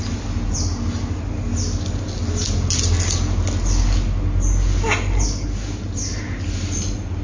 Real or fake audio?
real